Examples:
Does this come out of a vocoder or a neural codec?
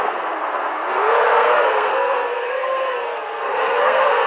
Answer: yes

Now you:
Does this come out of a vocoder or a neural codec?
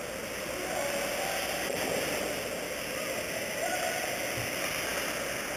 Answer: no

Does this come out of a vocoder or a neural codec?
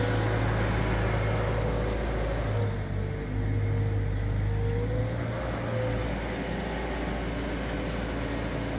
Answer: no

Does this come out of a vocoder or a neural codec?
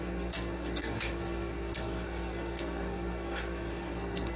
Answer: yes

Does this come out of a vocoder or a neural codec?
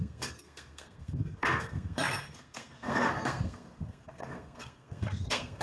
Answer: yes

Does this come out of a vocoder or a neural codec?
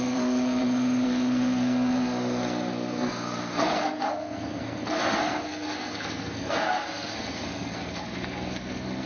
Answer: yes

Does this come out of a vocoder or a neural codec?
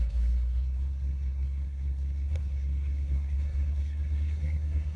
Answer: yes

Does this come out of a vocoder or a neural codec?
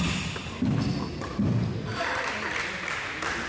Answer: no